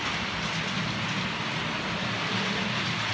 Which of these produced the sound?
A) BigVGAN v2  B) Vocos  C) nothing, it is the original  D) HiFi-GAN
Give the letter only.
C